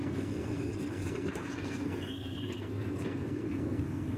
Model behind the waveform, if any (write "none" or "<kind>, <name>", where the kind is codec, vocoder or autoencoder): codec, SNAC